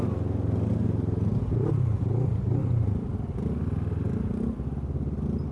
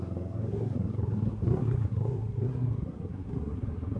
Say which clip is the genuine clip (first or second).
first